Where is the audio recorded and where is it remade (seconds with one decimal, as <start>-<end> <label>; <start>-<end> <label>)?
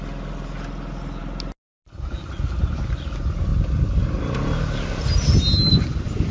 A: 0.0-6.3 recorded